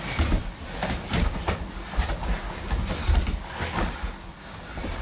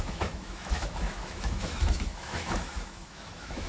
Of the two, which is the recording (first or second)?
first